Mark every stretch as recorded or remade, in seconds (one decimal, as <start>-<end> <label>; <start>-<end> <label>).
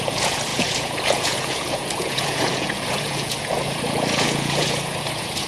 0.0-5.5 remade